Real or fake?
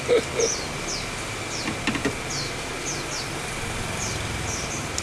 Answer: real